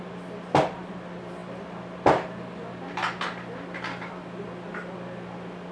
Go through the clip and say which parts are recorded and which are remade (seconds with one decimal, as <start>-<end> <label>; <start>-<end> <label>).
0.0-5.7 recorded